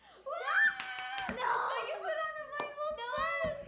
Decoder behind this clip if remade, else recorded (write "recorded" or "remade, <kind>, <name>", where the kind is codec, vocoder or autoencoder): recorded